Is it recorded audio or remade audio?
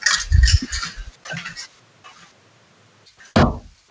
recorded